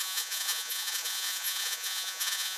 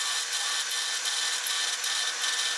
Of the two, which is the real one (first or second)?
second